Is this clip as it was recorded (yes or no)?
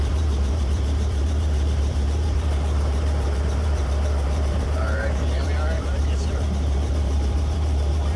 no